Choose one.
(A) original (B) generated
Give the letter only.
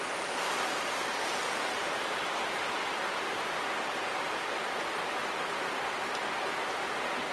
A